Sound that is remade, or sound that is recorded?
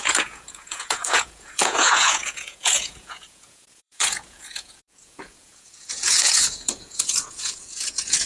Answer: remade